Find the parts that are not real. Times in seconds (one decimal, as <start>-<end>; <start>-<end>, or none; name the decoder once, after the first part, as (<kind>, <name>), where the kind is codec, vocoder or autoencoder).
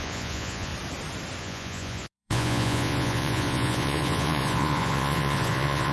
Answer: 0.0-0.7 (vocoder, Vocos); 1.4-5.9